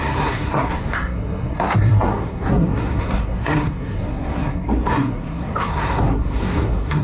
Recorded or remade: remade